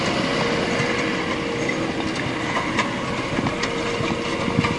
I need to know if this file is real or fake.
real